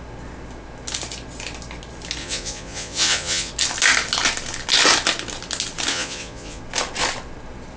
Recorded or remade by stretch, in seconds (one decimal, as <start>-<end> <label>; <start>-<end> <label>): 0.0-2.2 recorded; 2.2-3.5 remade; 3.5-5.9 recorded; 5.9-6.6 remade; 6.6-7.8 recorded